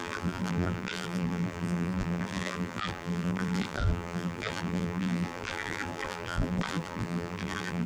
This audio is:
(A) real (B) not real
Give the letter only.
B